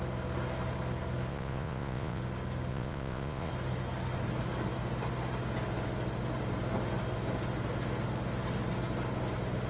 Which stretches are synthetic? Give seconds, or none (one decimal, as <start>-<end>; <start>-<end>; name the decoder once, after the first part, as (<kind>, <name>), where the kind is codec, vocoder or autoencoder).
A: 1.3-2.2 (vocoder, Vocos); 2.7-3.5